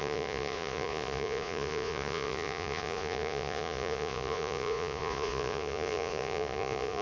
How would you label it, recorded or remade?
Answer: remade